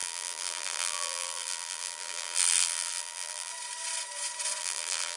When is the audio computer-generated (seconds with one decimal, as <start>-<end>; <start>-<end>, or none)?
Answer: 0.0-3.5; 4.6-5.2